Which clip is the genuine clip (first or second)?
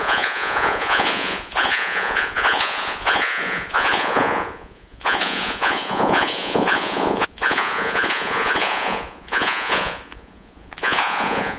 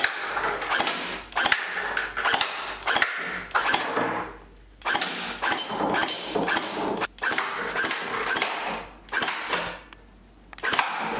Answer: second